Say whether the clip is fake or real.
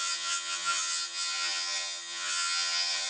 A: fake